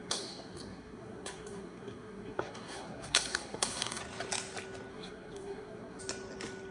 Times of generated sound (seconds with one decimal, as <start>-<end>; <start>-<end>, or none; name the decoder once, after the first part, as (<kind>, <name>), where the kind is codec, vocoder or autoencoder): 0.0-4.0 (codec, SNAC); 4.9-6.0